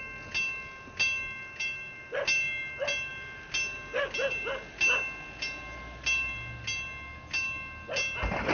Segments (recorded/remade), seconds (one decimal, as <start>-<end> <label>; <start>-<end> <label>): 0.0-8.5 recorded